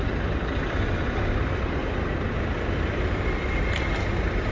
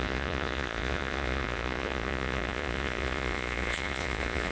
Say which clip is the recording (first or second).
first